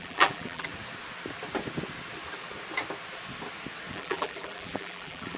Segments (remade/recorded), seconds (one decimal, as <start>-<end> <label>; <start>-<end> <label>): 0.0-0.7 remade; 0.7-3.9 recorded; 3.9-5.4 remade